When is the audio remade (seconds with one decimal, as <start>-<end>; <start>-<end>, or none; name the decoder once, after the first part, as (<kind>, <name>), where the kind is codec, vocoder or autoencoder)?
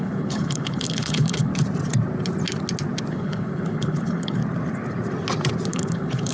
0.0-1.5 (codec, HILCodec); 3.1-4.4; 5.7-6.3